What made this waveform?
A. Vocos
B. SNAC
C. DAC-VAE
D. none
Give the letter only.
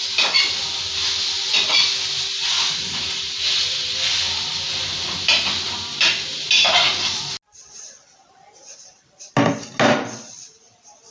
D